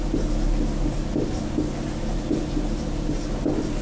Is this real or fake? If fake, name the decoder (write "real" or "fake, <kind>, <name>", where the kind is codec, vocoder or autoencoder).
real